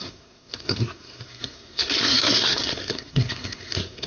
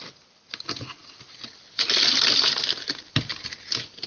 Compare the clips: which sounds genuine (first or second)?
second